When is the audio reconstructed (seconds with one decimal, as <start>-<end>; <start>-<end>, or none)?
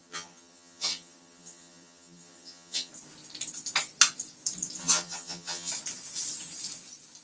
0.0-2.9; 4.8-5.7